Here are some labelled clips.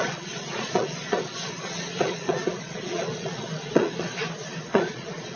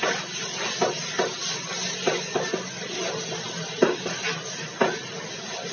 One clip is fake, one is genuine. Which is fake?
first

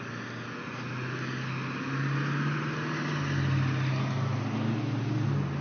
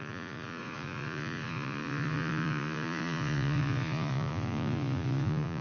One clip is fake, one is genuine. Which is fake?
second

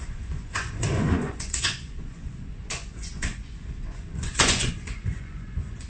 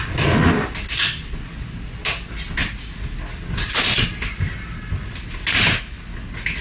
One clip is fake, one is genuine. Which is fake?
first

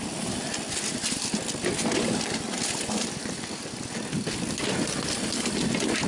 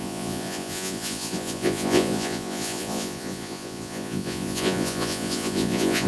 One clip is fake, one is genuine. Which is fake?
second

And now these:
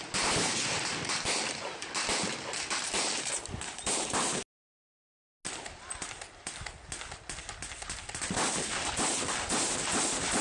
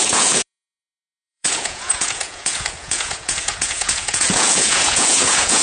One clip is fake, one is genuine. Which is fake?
second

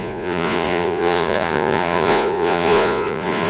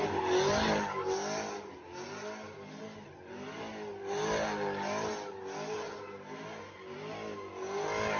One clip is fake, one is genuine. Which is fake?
first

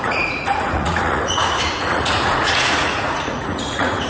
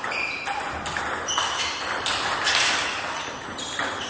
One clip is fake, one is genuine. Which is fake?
first